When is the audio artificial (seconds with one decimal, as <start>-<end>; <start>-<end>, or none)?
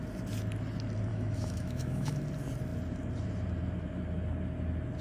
1.1-2.2